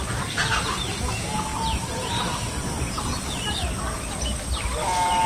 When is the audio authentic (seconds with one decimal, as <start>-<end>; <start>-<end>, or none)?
0.0-1.5; 2.4-5.3